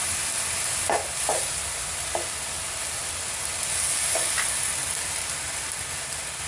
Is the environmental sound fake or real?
real